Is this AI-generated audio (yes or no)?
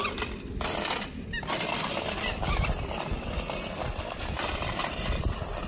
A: yes